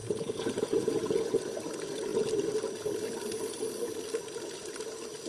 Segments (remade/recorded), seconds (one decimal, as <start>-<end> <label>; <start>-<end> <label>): 0.0-1.4 remade; 1.4-5.3 recorded